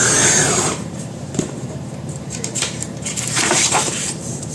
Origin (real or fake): fake